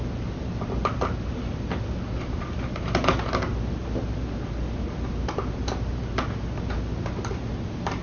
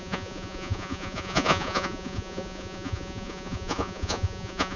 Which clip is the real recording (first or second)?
first